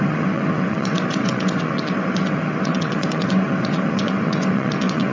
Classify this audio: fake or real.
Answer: fake